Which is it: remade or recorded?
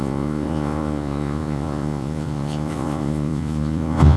remade